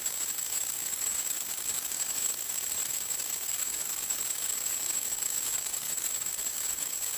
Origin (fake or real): fake